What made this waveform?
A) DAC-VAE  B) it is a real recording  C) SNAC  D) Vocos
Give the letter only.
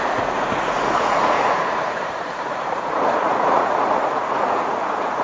D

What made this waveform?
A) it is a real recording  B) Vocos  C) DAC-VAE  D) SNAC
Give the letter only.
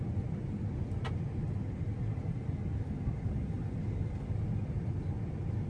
A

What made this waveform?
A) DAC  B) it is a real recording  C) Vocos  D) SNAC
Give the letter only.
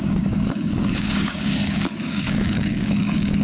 A